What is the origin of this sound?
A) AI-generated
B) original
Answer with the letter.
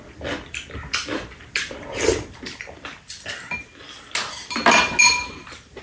B